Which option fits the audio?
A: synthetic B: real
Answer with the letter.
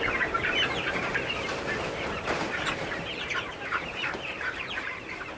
A